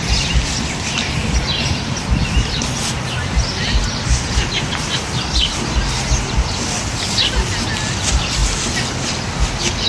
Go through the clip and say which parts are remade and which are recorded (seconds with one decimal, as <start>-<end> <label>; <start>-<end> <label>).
0.0-9.9 recorded